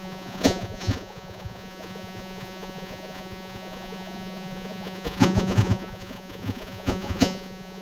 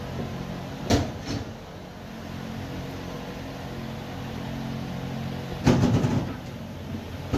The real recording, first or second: second